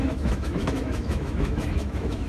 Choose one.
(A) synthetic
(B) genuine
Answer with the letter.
A